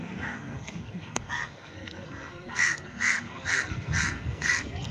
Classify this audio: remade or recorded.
remade